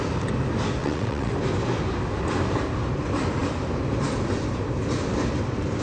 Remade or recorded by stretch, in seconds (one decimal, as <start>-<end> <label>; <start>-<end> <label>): 0.0-0.8 recorded; 0.8-1.3 remade; 1.3-5.8 recorded